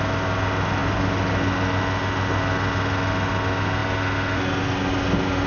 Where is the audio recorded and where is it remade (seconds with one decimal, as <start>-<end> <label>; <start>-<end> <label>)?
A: 0.0-5.5 recorded